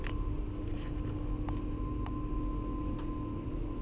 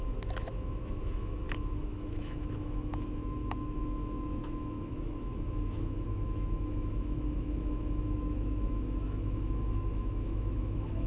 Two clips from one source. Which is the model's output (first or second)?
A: second